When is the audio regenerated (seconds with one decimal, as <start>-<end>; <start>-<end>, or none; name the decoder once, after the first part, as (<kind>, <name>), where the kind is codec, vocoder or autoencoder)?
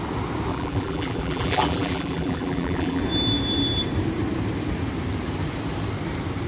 0.5-3.0 (vocoder, BigVGAN v2)